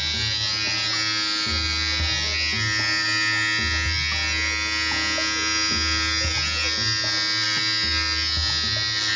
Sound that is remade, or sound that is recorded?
recorded